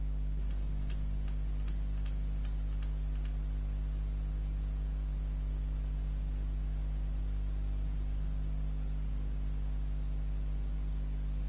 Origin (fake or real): real